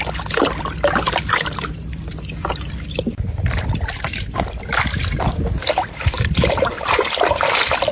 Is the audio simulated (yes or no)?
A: no